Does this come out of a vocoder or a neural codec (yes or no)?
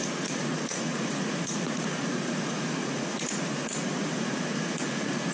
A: yes